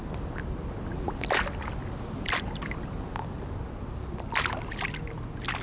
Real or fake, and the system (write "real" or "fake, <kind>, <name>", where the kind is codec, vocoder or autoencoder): real